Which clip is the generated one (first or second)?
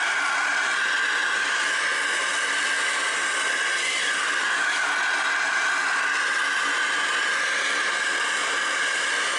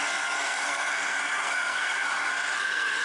second